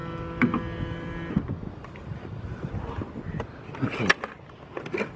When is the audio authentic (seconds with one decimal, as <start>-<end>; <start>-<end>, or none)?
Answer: 0.0-1.6; 2.7-5.2